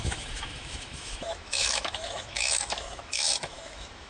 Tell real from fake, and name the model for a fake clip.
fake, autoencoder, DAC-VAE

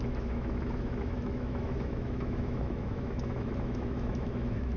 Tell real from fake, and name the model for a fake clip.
fake, autoencoder, DAC-VAE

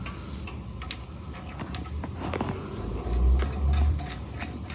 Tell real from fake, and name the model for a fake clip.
real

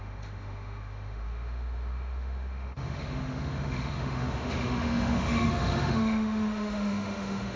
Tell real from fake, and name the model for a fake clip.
fake, autoencoder, DAC-VAE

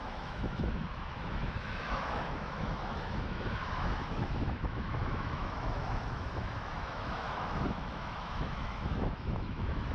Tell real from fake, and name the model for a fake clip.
fake, autoencoder, DAC-VAE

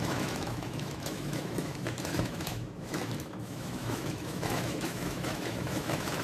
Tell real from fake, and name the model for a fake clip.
fake, autoencoder, DAC-VAE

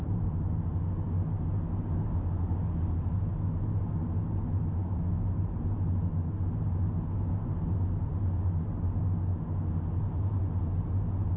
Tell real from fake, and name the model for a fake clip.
real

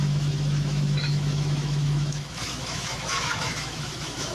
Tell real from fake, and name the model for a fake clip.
fake, autoencoder, DAC-VAE